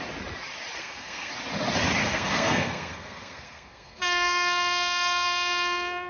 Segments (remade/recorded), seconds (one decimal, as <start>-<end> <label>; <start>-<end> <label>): 0.0-0.8 recorded; 0.8-1.3 remade; 1.3-2.0 recorded; 2.0-6.1 remade